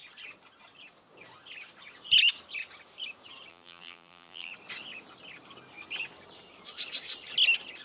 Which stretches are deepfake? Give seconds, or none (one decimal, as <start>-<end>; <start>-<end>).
3.5-4.5